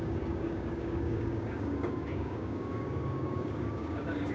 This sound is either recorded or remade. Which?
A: remade